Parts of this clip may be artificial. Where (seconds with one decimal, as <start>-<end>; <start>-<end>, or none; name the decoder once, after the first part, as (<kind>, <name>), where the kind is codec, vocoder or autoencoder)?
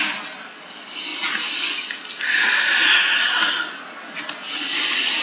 none